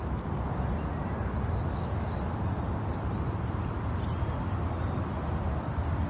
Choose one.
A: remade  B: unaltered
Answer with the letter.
B